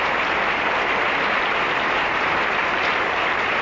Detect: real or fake real